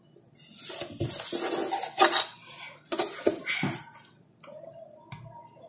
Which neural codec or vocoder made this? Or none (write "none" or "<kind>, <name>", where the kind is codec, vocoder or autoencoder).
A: none